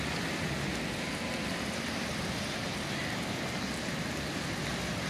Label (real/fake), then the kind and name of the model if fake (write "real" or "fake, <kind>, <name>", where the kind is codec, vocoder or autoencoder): real